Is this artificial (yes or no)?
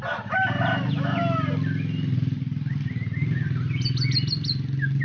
no